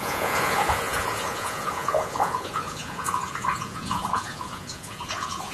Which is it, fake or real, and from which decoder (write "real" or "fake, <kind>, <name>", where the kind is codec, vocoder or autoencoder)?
fake, vocoder, Vocos